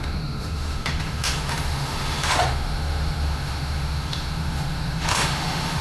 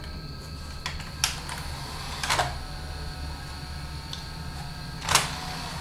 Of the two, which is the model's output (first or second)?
first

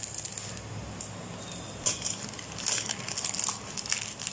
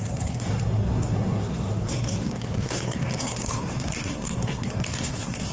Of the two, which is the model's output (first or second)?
second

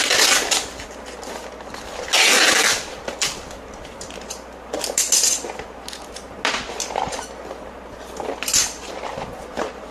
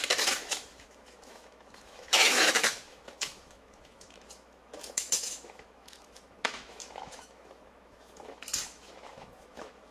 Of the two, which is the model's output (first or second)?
second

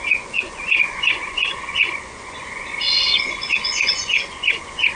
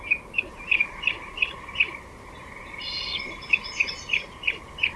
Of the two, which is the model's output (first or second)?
first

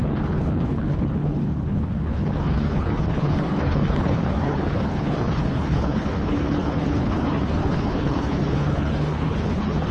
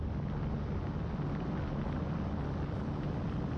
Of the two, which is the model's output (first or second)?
first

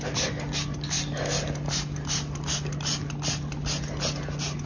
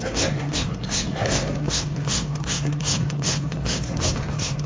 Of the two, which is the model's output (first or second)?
second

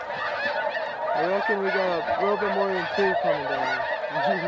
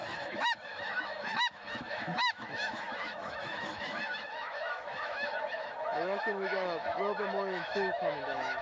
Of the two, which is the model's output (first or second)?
second